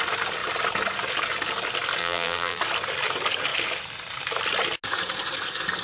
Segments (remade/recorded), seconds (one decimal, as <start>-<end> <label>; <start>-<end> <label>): 0.0-2.0 recorded; 2.0-2.6 remade; 2.6-5.8 recorded